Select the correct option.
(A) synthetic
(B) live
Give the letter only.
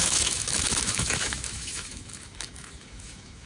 A